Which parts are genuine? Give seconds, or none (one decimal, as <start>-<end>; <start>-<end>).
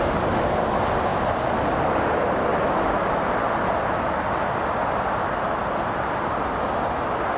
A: 0.0-7.4